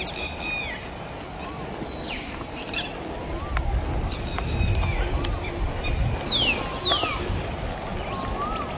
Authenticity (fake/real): real